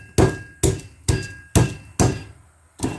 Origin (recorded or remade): recorded